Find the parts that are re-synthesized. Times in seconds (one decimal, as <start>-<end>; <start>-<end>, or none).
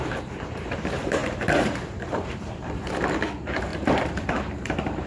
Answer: 0.0-5.1